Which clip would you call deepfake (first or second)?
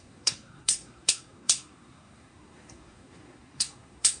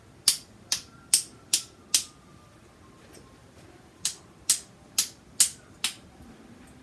first